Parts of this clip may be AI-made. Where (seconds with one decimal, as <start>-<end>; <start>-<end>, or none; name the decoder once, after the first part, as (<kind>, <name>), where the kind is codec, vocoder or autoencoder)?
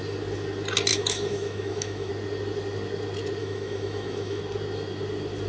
0.9-2.1 (autoencoder, DAC-VAE); 3.4-4.4